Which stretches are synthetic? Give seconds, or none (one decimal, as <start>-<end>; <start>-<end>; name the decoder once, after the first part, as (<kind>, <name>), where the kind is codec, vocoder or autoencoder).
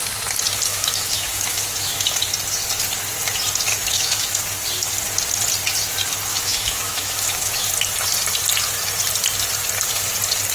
0.7-2.2 (autoencoder, DAC-VAE); 3.7-4.4; 6.3-7.7